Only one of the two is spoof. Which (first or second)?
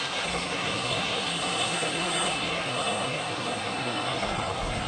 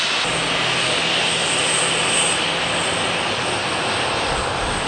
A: first